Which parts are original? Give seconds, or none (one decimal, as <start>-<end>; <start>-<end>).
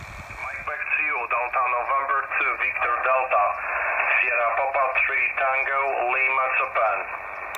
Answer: 0.0-0.4; 1.3-2.1; 5.1-7.6